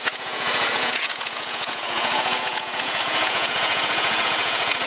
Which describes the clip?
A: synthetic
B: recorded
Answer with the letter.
A